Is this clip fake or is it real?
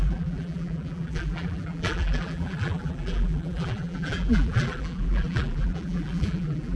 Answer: fake